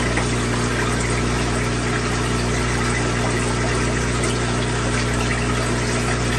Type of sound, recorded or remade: recorded